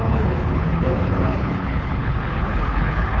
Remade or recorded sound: remade